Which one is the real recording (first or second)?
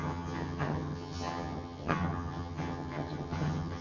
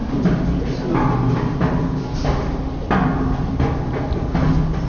second